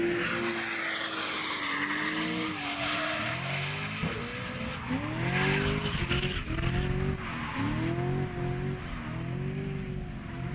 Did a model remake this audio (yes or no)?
no